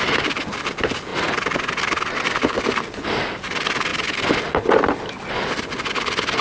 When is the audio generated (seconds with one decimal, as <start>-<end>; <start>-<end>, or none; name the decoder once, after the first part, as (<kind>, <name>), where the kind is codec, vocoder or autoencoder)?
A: none